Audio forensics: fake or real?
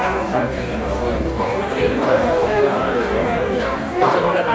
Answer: fake